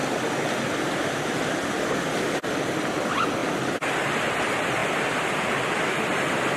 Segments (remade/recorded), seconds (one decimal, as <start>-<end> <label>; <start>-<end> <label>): 0.0-6.6 recorded